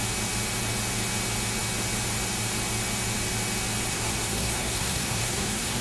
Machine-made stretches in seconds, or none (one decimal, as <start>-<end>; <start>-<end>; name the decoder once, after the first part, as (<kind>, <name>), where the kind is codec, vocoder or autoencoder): 3.9-5.8 (codec, SNAC)